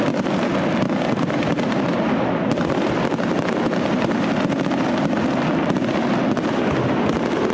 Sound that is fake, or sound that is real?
real